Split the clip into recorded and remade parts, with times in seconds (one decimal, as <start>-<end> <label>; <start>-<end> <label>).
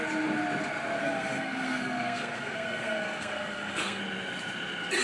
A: 0.0-1.0 recorded; 1.0-4.0 remade; 4.0-5.0 recorded